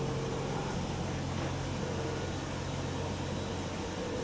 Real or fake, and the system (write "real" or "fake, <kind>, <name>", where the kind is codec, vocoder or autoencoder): real